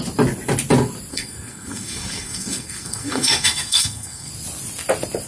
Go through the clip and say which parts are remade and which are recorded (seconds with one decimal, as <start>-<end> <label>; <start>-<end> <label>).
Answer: 0.0-1.1 recorded; 1.1-4.3 remade; 4.3-5.3 recorded